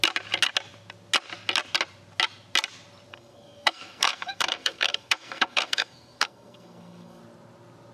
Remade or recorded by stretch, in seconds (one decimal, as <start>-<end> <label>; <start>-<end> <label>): 0.0-3.1 recorded; 3.1-7.2 remade; 7.2-7.9 recorded